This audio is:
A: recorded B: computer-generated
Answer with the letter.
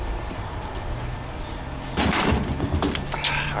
A